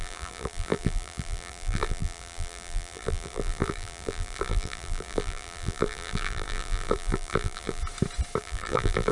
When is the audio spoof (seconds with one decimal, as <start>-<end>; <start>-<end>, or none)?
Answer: 0.0-7.8; 8.4-9.1